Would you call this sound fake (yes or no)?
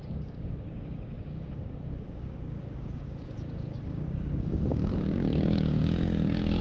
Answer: yes